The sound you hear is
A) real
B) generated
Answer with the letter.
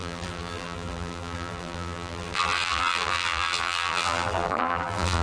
B